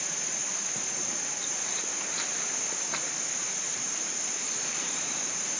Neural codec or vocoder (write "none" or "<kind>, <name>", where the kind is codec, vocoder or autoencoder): vocoder, BigVGAN v2